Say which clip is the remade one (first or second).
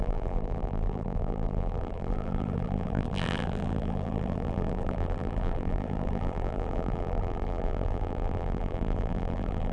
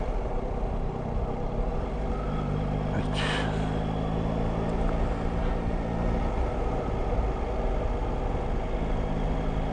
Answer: first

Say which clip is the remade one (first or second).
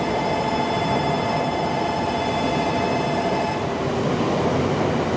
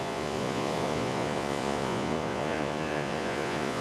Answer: second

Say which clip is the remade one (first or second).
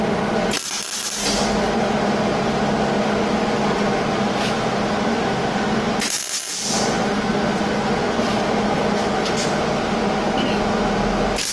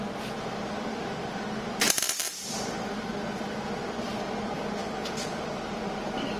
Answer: second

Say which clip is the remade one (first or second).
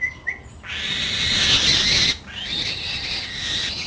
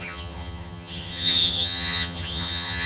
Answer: second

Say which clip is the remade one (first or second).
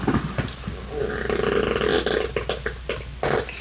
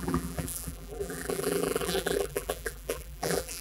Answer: second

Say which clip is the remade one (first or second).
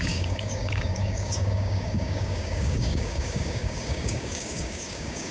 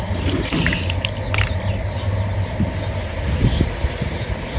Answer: first